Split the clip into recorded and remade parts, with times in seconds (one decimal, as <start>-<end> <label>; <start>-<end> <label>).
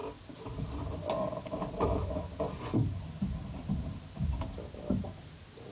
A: 0.0-1.8 recorded; 1.8-2.3 remade; 2.3-5.7 recorded